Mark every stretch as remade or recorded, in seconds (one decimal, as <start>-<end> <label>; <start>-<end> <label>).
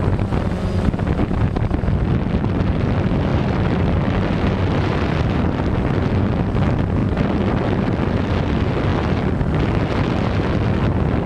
0.0-3.3 recorded; 3.3-5.4 remade; 5.4-11.3 recorded